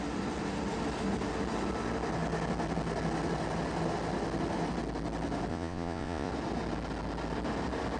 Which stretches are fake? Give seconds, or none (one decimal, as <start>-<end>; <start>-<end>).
5.5-6.3